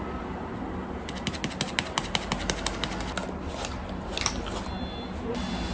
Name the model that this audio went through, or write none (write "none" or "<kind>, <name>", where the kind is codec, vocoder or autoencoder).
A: none